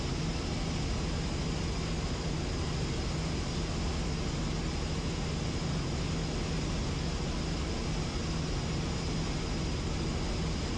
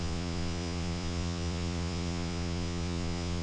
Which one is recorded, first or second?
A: first